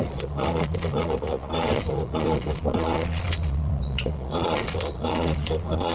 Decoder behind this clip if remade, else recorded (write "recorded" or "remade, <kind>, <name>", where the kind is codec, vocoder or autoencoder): remade, vocoder, Vocos